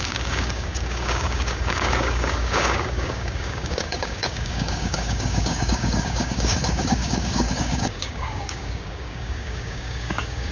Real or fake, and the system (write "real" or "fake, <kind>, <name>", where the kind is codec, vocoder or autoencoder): fake, codec, DAC